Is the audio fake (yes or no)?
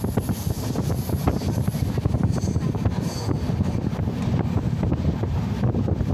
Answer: no